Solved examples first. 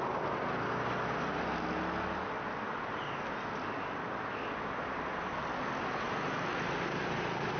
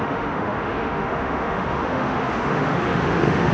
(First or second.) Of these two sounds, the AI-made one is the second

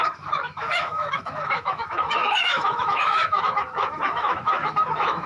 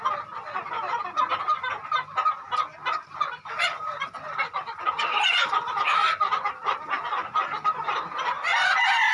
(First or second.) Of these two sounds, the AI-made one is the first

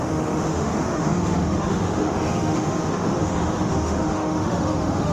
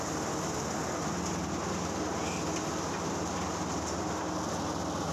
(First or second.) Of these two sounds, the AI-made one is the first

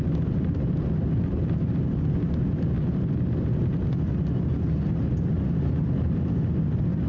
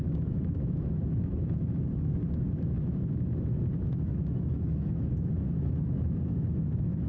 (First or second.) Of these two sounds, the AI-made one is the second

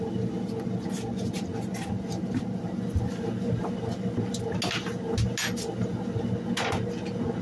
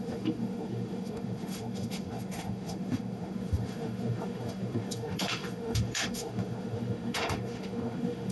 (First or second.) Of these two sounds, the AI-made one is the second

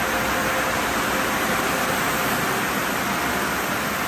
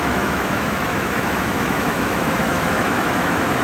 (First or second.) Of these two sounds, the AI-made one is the second